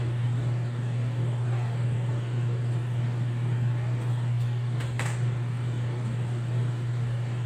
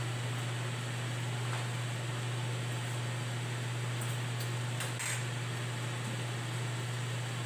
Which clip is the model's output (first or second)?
first